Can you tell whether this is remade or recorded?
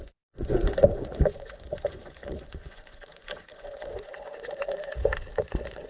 remade